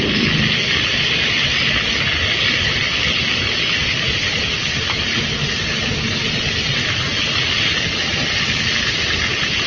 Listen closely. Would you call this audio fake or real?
real